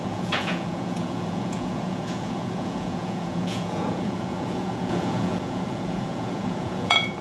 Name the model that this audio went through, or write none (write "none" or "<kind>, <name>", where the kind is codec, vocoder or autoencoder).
vocoder, Vocos